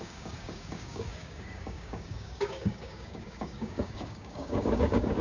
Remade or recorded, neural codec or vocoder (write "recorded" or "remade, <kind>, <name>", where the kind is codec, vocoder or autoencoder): remade, codec, DAC